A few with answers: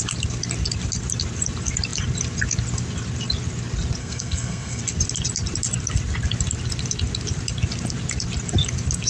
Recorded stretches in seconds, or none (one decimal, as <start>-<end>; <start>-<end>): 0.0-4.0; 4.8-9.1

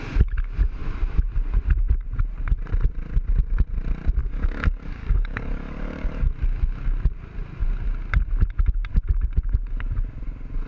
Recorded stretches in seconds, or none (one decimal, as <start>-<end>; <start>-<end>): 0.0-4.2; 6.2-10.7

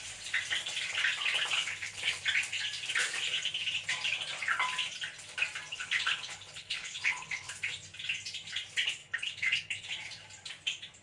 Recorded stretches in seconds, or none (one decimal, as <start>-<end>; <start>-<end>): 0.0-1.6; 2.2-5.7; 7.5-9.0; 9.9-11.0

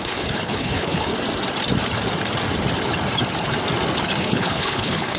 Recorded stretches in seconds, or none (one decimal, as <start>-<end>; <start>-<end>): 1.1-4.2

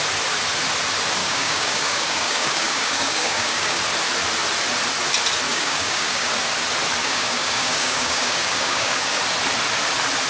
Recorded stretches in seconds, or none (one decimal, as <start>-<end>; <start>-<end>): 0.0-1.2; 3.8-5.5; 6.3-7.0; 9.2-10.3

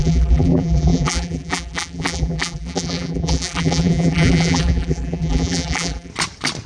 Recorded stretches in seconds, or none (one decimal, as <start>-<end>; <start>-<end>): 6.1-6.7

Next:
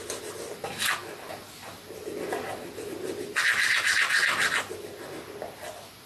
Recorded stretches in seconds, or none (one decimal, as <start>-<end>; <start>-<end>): 0.0-6.1